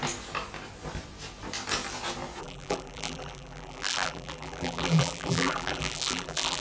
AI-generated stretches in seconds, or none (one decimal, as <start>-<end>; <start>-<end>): 2.4-6.6